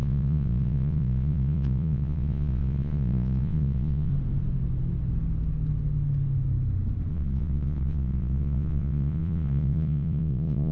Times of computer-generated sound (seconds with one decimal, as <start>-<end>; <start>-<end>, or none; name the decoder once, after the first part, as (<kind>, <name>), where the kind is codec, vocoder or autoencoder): 0.0-4.1 (vocoder, Vocos); 7.1-10.7